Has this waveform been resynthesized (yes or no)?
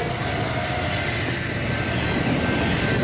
no